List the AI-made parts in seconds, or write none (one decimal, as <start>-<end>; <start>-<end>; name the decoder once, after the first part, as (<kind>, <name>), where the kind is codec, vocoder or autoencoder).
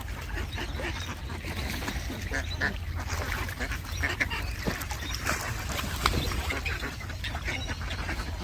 none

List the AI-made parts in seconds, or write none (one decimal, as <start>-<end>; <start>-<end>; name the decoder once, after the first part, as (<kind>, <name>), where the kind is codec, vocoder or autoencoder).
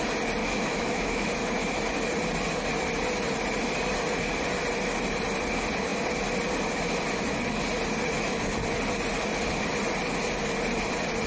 0.4-1.3 (autoencoder, DAC-VAE)